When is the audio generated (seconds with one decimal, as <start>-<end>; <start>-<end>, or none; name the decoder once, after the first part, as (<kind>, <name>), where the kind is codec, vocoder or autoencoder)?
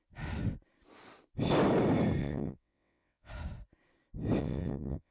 2.2-3.3 (vocoder, WaveNeXt); 4.4-5.1